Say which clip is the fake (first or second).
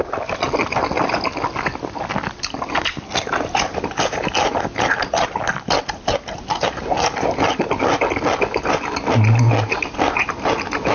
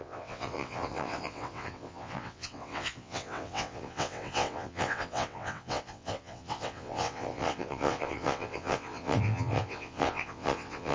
second